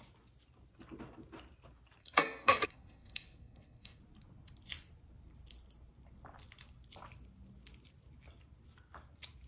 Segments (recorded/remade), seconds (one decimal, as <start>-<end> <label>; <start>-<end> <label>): 0.0-2.0 recorded; 2.0-4.0 remade; 4.0-9.5 recorded